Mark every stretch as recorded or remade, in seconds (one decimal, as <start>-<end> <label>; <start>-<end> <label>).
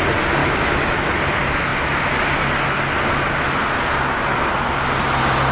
0.0-0.4 recorded; 0.4-0.9 remade; 0.9-5.5 recorded